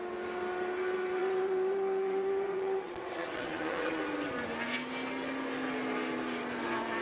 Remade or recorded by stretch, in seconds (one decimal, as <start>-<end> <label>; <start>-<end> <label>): 0.0-1.2 recorded; 1.2-4.0 remade; 4.0-7.0 recorded